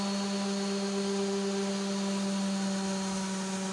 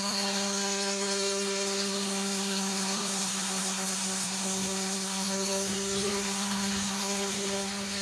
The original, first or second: first